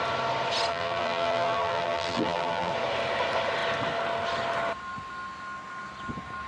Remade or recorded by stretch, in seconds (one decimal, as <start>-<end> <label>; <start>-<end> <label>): 0.0-0.7 recorded; 0.7-2.7 remade; 2.7-6.5 recorded